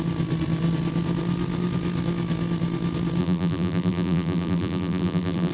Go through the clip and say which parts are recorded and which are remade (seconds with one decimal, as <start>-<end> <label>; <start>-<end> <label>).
0.0-3.2 recorded; 3.2-5.5 remade

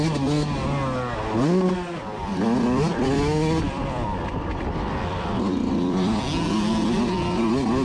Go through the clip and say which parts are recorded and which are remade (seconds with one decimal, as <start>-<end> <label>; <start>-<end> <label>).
0.0-2.0 recorded; 2.0-6.2 remade; 6.2-7.8 recorded

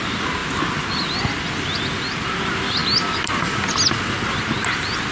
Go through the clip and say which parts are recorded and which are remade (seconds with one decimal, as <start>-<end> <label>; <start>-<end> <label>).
0.0-5.1 recorded

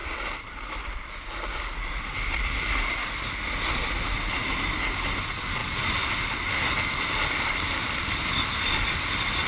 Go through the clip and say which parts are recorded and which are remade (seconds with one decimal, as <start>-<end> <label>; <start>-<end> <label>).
0.0-1.7 remade; 1.7-5.6 recorded; 5.6-9.0 remade; 9.0-9.5 recorded

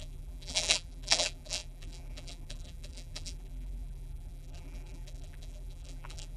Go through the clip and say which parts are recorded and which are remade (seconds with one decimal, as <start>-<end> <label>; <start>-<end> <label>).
0.0-6.4 remade

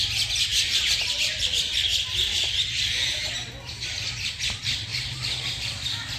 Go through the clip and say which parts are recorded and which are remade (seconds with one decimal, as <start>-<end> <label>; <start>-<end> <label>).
0.0-6.2 recorded

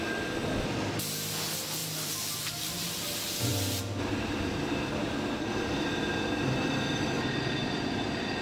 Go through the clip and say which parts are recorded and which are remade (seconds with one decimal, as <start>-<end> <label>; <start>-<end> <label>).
0.0-1.8 recorded; 1.8-2.9 remade; 2.9-3.5 recorded; 3.5-8.4 remade